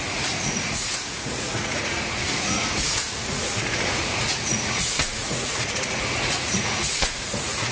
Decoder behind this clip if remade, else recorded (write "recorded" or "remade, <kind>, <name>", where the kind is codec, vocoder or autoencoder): remade, vocoder, Vocos